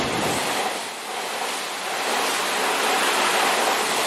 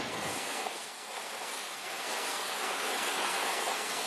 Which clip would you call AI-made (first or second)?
second